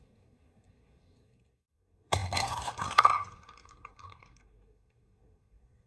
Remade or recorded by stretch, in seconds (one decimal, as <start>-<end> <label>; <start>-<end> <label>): 0.0-5.9 remade